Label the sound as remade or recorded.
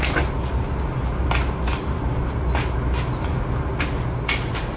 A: recorded